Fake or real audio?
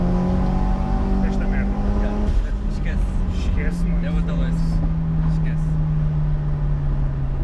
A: real